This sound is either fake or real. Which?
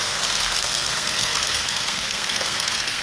fake